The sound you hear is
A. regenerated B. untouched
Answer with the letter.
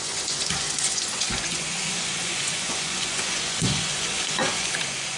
A